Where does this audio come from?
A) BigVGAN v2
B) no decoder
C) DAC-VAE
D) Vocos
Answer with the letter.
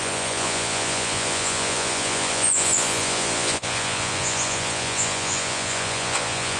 D